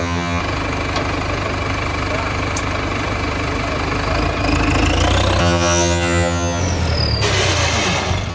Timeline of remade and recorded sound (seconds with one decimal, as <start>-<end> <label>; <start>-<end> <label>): 0.0-0.4 remade; 0.4-5.4 recorded; 5.4-6.6 remade; 6.6-8.3 recorded